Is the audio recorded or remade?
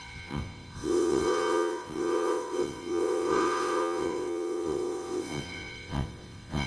remade